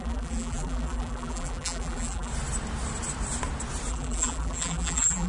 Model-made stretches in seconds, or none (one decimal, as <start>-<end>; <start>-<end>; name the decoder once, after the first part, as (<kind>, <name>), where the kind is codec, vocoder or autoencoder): 0.0-2.3 (vocoder, BigVGAN v2); 3.9-5.3